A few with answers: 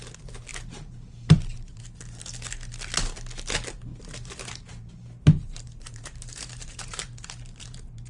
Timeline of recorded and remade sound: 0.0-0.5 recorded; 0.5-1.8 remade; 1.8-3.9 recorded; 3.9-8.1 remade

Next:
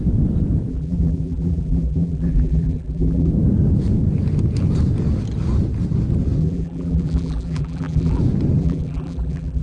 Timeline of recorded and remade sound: 0.0-0.7 recorded; 0.7-3.3 remade; 3.3-6.4 recorded; 6.4-8.2 remade; 8.2-8.6 recorded; 8.6-9.6 remade

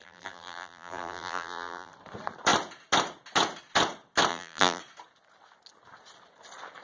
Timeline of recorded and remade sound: 0.0-1.9 remade; 1.9-4.3 recorded; 4.3-4.8 remade; 4.8-6.8 recorded

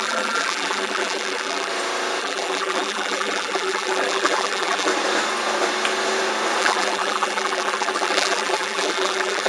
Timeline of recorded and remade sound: 0.0-1.7 remade; 1.7-2.2 recorded; 2.2-4.9 remade; 4.9-6.6 recorded; 6.6-9.5 remade